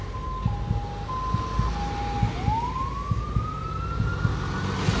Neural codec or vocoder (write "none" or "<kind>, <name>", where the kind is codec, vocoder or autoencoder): none